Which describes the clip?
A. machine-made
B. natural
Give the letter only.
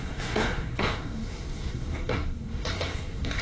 A